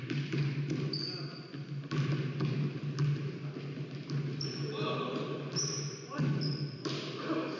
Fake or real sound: real